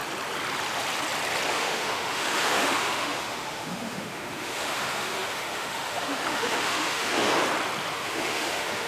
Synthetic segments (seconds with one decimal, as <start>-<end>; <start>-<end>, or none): 1.5-7.3; 7.9-8.9